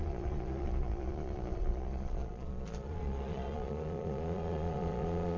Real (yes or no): no